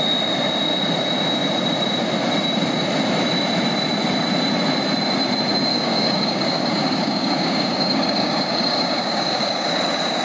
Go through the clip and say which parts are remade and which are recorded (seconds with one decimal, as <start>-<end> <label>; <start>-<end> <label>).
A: 0.0-5.7 recorded; 5.7-10.2 remade